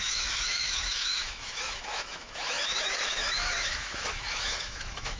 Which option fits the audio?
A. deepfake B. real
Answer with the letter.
A